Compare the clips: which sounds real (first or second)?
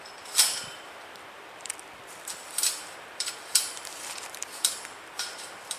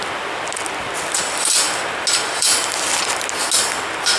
second